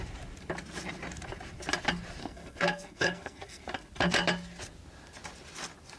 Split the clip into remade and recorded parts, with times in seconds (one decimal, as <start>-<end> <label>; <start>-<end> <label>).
0.0-2.2 recorded; 2.2-3.6 remade; 3.6-6.0 recorded